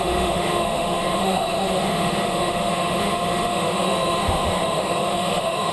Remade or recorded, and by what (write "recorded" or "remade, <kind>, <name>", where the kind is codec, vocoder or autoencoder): remade, autoencoder, DAC-VAE